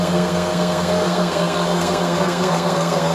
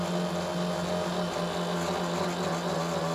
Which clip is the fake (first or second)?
first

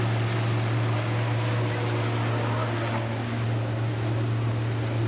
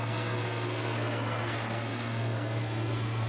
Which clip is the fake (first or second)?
second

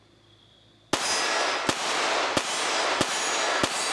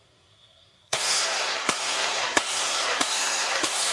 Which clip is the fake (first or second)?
second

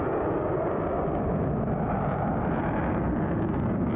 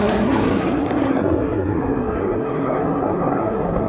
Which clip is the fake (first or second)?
second